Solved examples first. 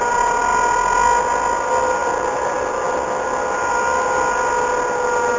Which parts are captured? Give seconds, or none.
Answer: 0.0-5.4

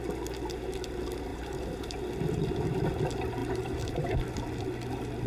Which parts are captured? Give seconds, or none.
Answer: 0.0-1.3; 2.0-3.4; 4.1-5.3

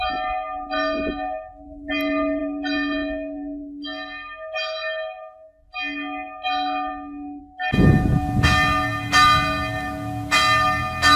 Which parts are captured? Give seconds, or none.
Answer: 0.0-11.2

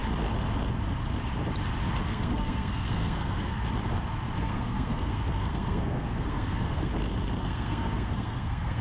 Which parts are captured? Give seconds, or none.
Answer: 0.0-2.0; 3.6-4.4; 6.9-7.4

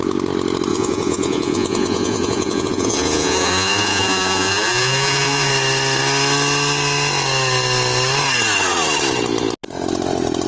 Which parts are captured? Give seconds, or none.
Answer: 0.0-0.7; 5.5-10.5